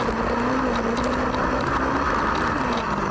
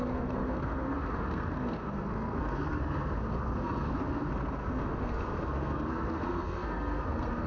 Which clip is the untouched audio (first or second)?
first